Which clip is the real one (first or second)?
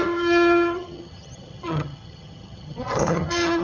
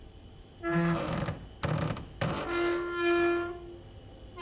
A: second